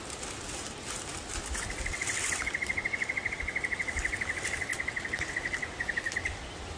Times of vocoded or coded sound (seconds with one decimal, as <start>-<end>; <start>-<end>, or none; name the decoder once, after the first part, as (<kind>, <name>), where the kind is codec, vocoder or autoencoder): none